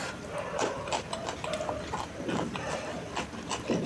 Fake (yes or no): no